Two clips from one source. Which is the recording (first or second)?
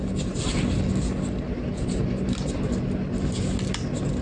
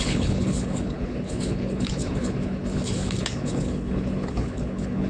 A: first